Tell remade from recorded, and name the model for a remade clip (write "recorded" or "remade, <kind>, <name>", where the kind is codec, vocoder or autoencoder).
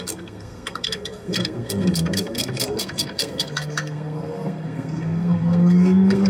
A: remade, codec, SNAC